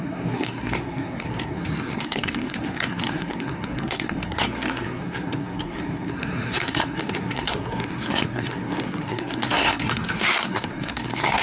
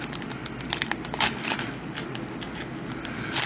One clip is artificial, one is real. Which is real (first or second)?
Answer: second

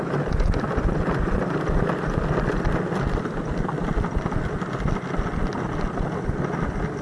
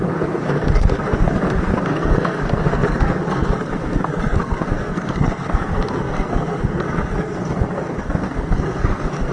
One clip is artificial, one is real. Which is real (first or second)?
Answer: first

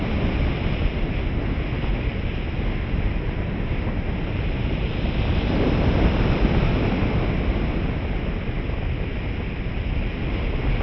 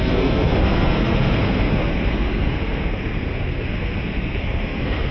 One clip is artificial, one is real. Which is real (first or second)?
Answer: first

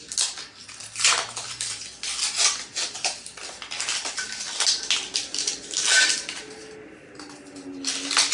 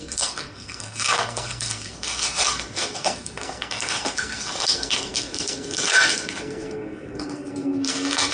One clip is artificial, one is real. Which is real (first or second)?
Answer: first